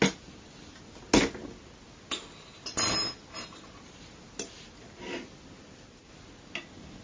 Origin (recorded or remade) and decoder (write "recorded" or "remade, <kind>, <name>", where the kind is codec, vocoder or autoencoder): recorded